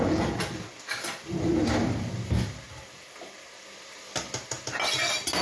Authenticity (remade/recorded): recorded